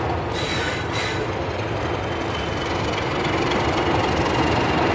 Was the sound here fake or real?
real